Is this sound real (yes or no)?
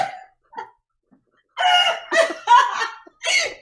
yes